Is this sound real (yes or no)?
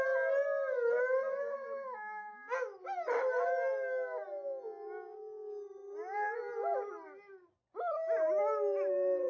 yes